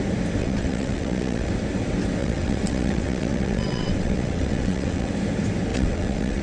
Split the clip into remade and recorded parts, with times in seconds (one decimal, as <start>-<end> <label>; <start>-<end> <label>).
0.0-0.4 recorded; 0.4-1.5 remade; 1.5-2.2 recorded; 2.2-5.1 remade; 5.1-5.7 recorded; 5.7-6.4 remade